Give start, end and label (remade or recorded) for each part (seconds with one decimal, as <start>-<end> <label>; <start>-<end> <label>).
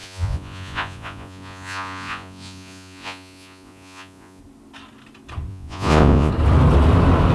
0.0-4.4 remade; 4.4-5.5 recorded; 5.5-6.3 remade; 6.3-7.3 recorded